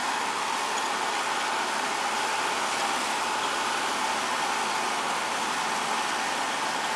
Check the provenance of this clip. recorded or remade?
recorded